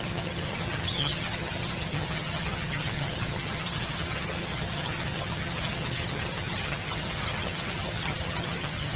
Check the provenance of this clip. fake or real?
fake